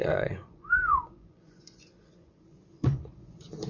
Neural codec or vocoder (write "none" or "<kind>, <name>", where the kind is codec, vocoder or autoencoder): vocoder, Vocos